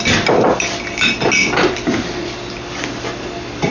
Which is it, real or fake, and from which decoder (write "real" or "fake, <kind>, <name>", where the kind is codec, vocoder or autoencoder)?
real